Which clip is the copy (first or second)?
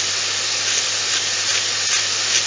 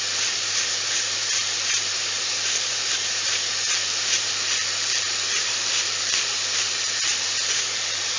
second